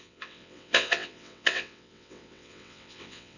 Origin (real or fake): fake